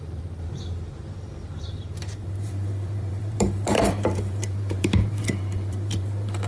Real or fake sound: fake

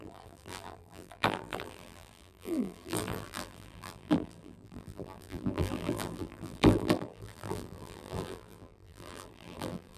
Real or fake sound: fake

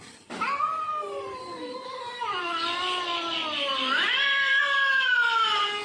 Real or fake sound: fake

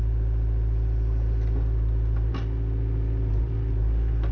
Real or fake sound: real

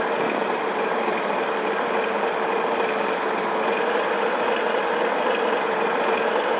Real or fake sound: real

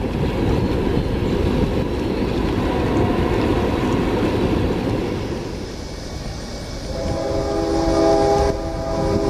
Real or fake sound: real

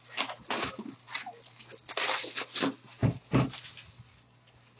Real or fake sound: real